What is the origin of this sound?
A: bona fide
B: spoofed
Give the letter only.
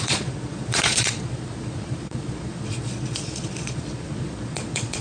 B